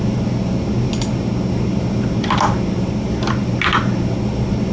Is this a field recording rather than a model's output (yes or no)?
yes